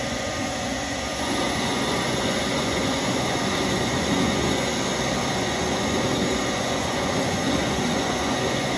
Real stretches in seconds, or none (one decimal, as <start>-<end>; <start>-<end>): 4.7-5.3